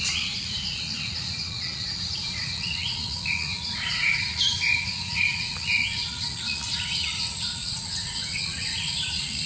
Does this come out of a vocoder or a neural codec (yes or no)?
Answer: yes